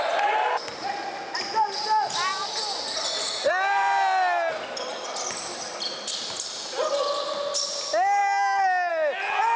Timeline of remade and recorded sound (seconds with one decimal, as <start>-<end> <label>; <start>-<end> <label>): 0.0-9.6 recorded